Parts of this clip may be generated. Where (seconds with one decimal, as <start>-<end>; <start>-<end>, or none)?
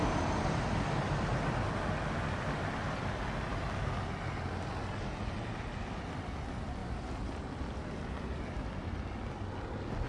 none